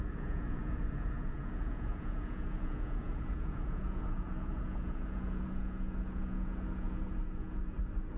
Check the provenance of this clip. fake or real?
fake